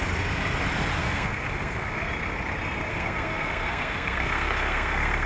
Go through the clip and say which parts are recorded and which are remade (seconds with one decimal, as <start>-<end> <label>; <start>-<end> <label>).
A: 0.0-1.0 recorded; 1.0-2.1 remade; 2.1-2.9 recorded; 2.9-5.3 remade